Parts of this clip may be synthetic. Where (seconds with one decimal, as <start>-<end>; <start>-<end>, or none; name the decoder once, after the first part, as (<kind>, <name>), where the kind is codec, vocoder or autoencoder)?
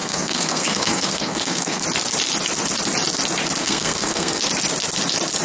0.0-1.8 (codec, SNAC); 3.6-4.4